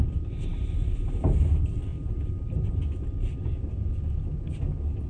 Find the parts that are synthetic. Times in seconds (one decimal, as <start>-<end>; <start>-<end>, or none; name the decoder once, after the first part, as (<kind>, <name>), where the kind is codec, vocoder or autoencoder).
1.9-2.7 (vocoder, BigVGAN v2)